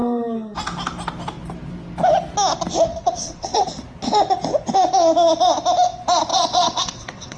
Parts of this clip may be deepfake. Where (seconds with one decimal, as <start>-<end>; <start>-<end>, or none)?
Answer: 2.9-3.7; 6.3-7.4